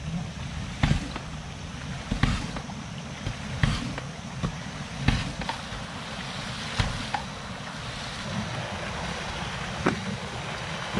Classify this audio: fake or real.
real